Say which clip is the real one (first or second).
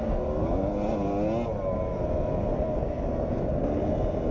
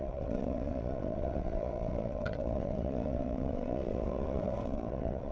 first